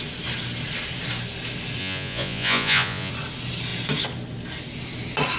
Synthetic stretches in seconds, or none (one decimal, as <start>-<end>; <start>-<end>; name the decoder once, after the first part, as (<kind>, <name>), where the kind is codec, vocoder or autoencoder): 1.8-3.1 (vocoder, Vocos)